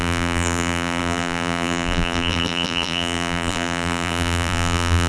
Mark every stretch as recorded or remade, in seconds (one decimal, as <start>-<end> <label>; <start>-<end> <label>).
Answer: 0.0-5.1 remade